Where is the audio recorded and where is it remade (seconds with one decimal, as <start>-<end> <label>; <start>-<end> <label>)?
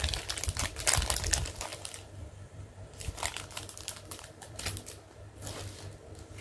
0.0-1.7 recorded; 1.7-5.3 remade; 5.3-6.4 recorded